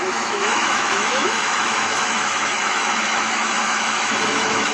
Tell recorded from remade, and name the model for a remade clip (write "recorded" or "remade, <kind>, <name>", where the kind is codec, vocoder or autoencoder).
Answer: remade, autoencoder, DAC-VAE